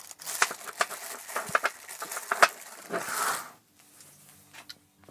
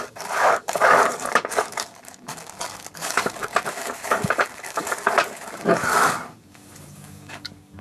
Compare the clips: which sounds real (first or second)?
first